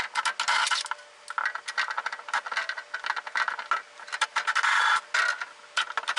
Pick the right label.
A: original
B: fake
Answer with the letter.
A